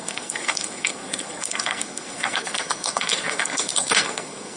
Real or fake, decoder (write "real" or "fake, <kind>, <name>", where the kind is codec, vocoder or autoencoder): fake, codec, SNAC